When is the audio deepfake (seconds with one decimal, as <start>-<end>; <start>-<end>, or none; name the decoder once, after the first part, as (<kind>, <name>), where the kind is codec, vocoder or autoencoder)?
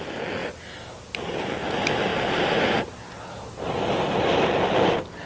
none